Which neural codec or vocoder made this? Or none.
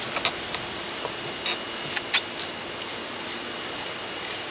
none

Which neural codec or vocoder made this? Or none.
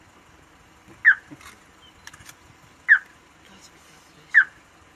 none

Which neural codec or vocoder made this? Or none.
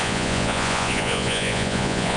vocoder, Vocos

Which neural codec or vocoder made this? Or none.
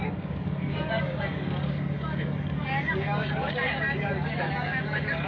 codec, DAC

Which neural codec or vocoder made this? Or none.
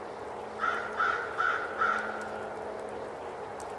none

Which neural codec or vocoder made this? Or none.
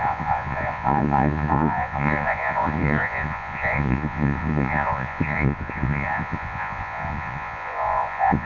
vocoder, Vocos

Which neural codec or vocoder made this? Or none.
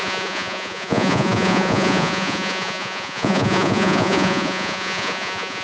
vocoder, Vocos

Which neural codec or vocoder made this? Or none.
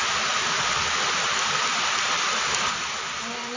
none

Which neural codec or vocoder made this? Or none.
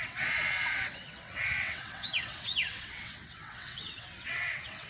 vocoder, WaveNeXt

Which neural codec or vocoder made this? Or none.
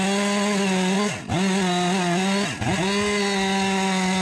none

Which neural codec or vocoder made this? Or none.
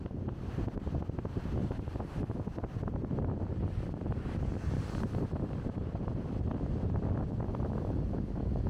none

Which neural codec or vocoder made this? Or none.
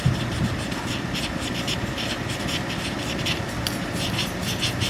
vocoder, BigVGAN v2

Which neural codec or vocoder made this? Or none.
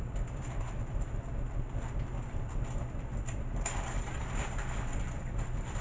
vocoder, BigVGAN v2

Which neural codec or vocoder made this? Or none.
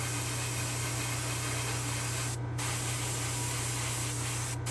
none